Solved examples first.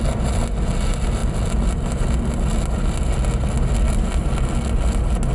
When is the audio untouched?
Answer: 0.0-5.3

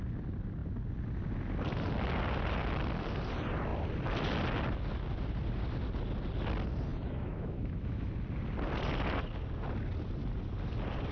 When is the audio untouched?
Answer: 0.0-6.9; 8.1-11.1

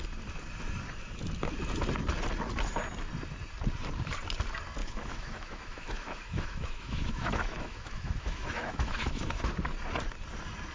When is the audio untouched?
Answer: 0.0-4.8; 9.5-10.7

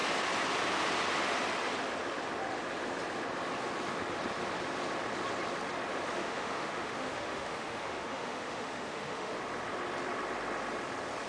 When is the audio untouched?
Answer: 0.0-6.2; 9.3-11.3